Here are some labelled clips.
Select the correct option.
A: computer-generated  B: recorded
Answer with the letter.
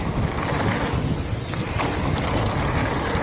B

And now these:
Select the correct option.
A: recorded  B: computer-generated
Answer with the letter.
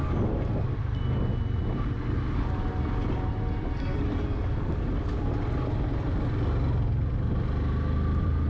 A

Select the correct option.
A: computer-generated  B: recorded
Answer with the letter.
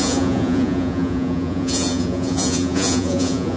A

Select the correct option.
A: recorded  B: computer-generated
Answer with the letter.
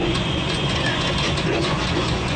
B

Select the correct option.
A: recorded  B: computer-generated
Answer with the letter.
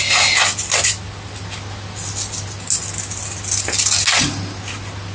A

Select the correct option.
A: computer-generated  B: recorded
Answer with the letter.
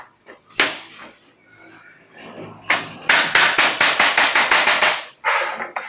B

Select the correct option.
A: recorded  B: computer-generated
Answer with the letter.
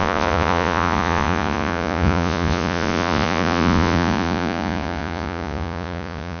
B